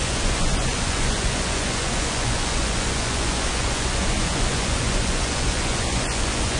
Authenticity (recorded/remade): remade